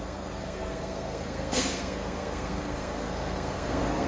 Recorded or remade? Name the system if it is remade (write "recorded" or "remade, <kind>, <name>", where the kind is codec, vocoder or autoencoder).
remade, codec, SNAC